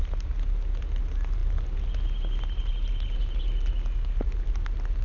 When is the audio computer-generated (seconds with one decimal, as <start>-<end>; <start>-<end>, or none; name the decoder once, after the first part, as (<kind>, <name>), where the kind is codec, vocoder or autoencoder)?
none